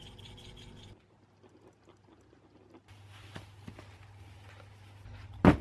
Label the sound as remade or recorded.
recorded